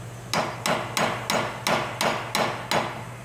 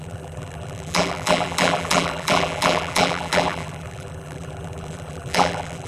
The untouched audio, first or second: first